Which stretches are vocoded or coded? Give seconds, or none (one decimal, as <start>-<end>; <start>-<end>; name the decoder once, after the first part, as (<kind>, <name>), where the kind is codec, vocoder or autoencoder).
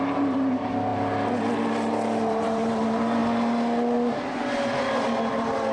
0.0-0.9 (vocoder, BigVGAN v2); 2.3-3.2; 5.3-5.7